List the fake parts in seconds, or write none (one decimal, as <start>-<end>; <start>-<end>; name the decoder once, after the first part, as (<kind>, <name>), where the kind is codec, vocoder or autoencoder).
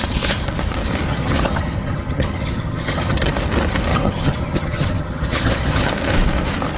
1.1-3.3 (vocoder, HiFi-GAN); 3.9-5.9